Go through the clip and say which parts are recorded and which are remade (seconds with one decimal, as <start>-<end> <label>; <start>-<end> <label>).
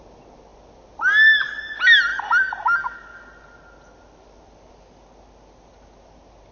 0.0-6.5 recorded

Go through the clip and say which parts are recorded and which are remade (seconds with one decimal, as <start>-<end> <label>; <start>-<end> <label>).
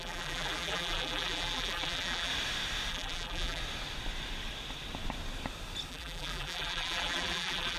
0.0-2.3 remade; 2.3-2.9 recorded; 2.9-3.6 remade; 3.6-5.9 recorded; 5.9-7.8 remade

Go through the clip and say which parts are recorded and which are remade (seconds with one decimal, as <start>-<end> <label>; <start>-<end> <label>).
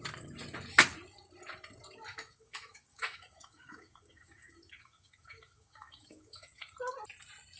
0.0-2.1 recorded; 2.1-6.7 remade; 6.7-7.6 recorded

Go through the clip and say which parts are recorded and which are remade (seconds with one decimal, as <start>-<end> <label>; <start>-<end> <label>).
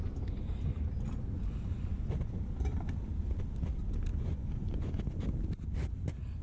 0.0-4.1 recorded; 4.1-5.0 remade; 5.0-6.4 recorded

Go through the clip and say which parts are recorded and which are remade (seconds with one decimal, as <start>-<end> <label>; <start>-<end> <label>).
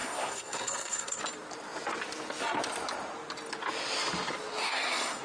0.0-1.2 remade; 1.2-4.6 recorded; 4.6-5.2 remade